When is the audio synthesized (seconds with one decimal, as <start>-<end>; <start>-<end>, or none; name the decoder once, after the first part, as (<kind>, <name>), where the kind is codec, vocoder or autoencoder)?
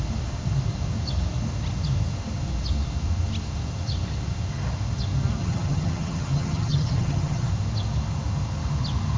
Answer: 5.4-7.5 (vocoder, HiFi-GAN)